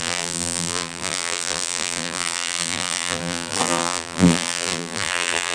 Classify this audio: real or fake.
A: fake